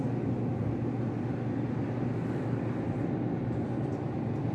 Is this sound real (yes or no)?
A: yes